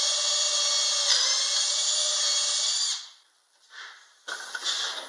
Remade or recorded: recorded